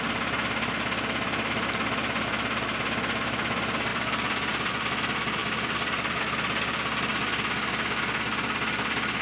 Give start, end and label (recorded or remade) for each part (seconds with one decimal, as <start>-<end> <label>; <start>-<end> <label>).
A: 0.0-3.9 recorded; 3.9-4.7 remade; 4.7-5.4 recorded; 5.4-6.2 remade; 6.2-7.1 recorded; 7.1-7.7 remade; 7.7-9.2 recorded